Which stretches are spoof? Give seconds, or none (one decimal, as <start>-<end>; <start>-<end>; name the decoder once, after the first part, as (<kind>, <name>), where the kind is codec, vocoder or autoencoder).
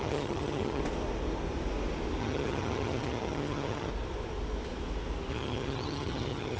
0.0-0.8 (vocoder, HiFi-GAN); 2.2-3.9; 5.3-6.6